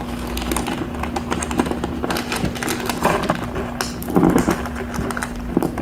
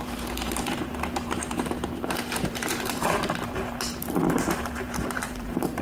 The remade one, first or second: second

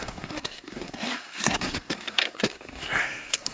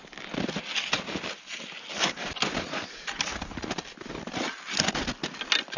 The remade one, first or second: first